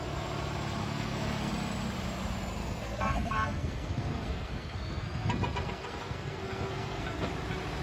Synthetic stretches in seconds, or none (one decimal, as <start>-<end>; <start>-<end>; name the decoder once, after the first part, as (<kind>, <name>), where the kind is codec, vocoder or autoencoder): 0.8-1.5 (codec, SNAC); 2.6-7.3